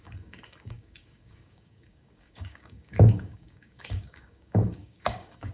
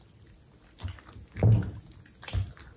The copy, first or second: first